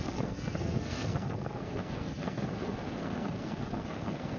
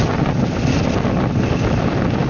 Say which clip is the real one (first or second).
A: second